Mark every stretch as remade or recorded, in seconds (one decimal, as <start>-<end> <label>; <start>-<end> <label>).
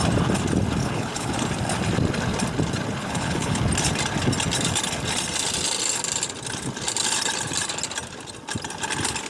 0.0-0.8 recorded; 0.8-1.3 remade; 1.3-3.0 recorded; 3.0-3.6 remade; 3.6-9.3 recorded